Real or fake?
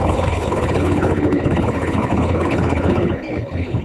fake